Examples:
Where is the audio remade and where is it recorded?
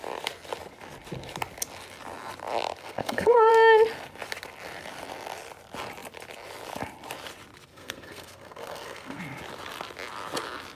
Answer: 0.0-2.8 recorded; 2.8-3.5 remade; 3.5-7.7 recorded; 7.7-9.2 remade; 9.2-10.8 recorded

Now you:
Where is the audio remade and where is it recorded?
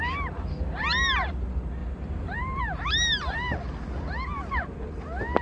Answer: 0.0-1.8 recorded; 1.8-2.6 remade; 2.6-5.4 recorded